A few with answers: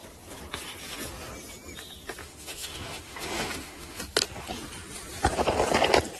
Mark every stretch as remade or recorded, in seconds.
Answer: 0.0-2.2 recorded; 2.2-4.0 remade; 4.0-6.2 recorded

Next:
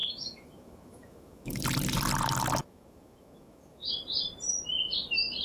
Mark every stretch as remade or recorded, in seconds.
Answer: 0.0-1.6 remade; 1.6-2.6 recorded; 2.6-3.9 remade; 3.9-5.4 recorded

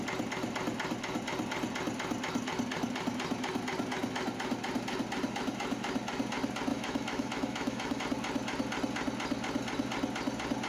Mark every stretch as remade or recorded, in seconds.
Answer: 0.0-6.7 recorded; 6.7-8.0 remade; 8.0-10.7 recorded

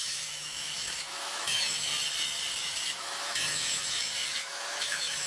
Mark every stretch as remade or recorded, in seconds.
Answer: 0.0-1.9 remade; 1.9-2.6 recorded; 2.6-5.3 remade

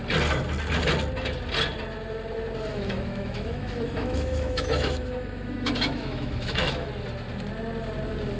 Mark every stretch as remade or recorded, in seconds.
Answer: 0.0-2.7 recorded; 2.7-6.9 remade; 6.9-8.4 recorded

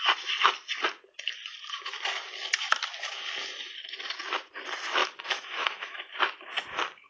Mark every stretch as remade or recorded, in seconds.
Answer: 0.0-5.0 recorded; 5.0-6.2 remade; 6.2-7.1 recorded